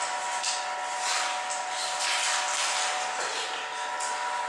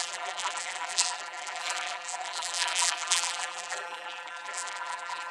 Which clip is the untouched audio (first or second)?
first